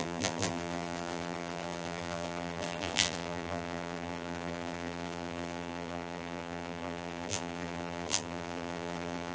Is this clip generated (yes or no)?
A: yes